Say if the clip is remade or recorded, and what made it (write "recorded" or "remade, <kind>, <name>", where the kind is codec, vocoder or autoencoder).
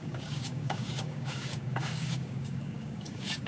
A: remade, codec, DAC